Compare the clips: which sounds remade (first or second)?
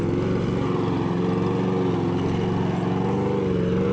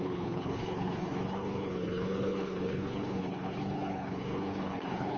second